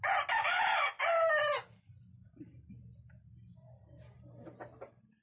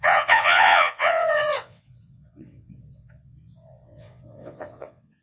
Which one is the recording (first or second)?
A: first